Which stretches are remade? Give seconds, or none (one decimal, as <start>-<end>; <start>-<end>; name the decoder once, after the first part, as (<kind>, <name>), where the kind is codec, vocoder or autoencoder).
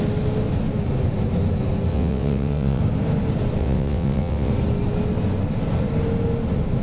1.9-2.8 (vocoder, WaveNeXt); 3.6-4.5